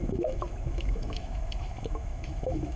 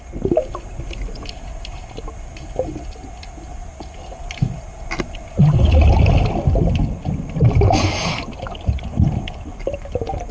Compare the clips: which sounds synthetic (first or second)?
first